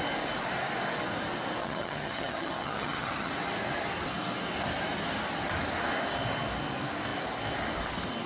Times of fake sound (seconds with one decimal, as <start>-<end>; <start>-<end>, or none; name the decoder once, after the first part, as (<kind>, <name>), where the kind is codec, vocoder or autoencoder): 1.6-3.3 (vocoder, HiFi-GAN)